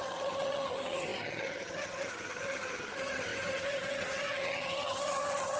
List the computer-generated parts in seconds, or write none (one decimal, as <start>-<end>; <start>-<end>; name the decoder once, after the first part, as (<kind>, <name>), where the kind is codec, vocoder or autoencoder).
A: 0.0-5.6 (vocoder, HiFi-GAN)

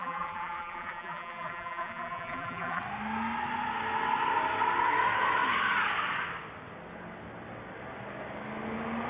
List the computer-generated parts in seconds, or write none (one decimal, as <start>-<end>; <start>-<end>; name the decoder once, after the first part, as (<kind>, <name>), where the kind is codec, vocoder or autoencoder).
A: 0.0-2.8 (vocoder, BigVGAN v2)